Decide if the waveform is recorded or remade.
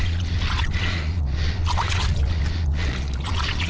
remade